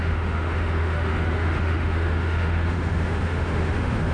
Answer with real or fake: fake